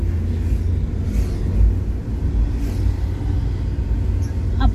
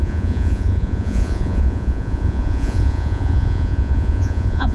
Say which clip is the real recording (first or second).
first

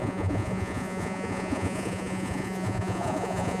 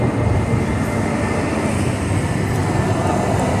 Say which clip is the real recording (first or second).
second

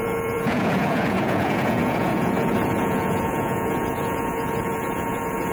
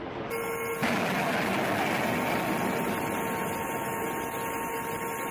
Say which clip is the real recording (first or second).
second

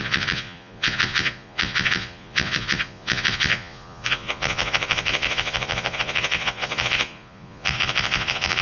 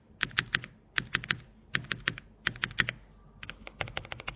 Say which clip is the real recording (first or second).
second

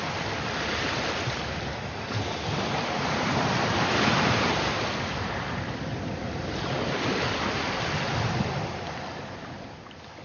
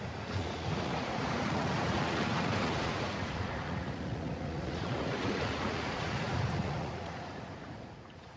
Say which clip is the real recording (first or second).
first